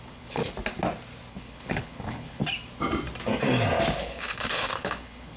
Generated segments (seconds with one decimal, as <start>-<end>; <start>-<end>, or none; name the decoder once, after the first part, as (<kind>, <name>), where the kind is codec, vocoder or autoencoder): 0.0-0.4 (codec, HILCodec); 1.3-2.4; 4.0-5.4